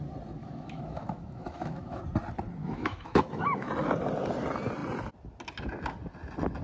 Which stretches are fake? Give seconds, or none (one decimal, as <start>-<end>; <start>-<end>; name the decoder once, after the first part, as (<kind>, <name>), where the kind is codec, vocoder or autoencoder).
0.4-2.0 (autoencoder, DAC-VAE); 2.6-3.7